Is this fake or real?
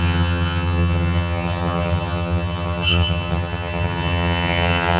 fake